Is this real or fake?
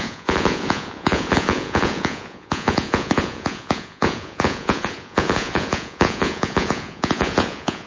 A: fake